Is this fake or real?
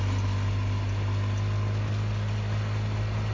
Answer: real